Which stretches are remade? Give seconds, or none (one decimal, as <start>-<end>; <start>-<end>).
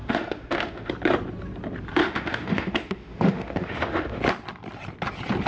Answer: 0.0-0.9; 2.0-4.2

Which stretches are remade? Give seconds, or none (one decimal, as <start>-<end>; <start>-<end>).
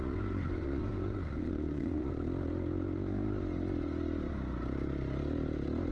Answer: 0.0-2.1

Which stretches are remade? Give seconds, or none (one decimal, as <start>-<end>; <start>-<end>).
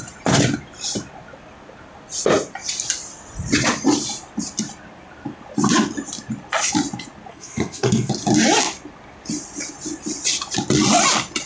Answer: 7.3-8.1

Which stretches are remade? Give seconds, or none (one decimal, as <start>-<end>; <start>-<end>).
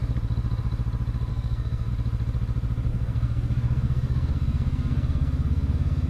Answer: 1.3-1.9; 2.9-6.1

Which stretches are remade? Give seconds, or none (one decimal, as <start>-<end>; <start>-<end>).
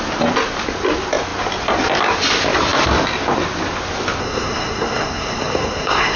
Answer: 4.2-6.2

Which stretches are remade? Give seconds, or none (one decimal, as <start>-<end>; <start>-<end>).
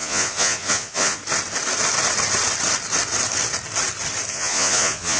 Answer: 0.0-1.2; 4.3-5.2